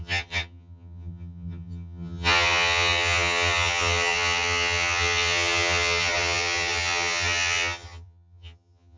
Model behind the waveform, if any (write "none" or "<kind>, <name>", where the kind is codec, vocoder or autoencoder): vocoder, HiFi-GAN